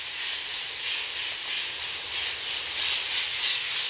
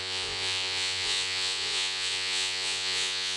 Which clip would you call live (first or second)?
first